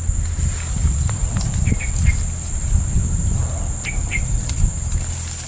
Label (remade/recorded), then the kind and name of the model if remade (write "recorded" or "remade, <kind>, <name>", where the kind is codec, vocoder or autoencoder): recorded